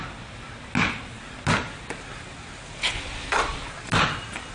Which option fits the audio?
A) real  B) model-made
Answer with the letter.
A